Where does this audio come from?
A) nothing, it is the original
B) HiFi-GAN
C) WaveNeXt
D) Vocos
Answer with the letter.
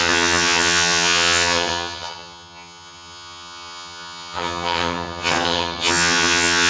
B